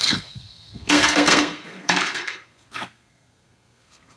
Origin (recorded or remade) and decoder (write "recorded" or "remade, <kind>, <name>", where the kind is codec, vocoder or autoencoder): remade, codec, SNAC